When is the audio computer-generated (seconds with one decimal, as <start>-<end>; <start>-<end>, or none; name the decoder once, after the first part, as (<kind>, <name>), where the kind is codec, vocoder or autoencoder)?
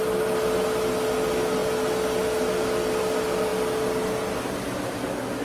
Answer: none